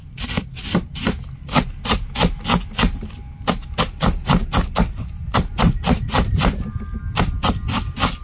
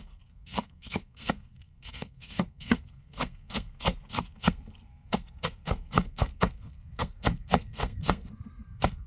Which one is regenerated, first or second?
second